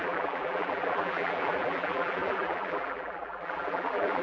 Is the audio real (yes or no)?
no